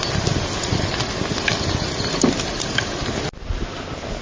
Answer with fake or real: real